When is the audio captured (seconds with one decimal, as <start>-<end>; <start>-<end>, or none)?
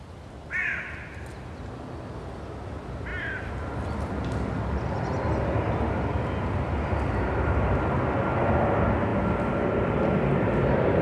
0.0-11.0